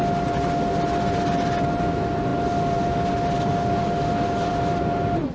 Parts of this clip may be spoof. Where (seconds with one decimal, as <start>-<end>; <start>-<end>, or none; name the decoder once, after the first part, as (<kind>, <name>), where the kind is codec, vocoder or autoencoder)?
none